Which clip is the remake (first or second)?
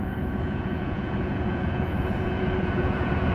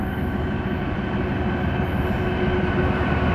first